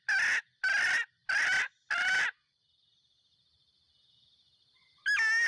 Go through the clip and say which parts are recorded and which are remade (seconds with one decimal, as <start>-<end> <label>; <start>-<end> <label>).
0.0-5.5 recorded